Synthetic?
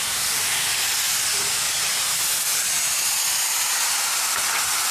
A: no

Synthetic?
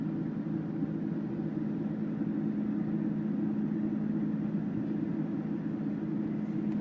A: no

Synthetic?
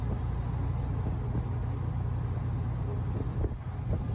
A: no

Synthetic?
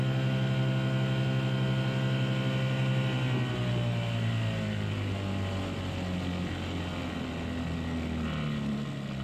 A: no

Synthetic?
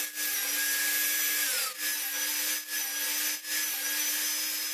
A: no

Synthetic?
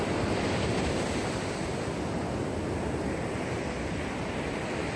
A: no